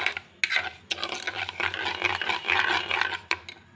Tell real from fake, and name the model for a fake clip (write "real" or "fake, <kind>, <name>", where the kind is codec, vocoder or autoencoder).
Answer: real